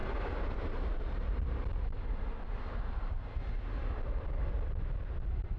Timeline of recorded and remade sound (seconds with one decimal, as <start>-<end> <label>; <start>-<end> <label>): 0.0-5.6 recorded